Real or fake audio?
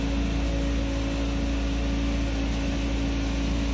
real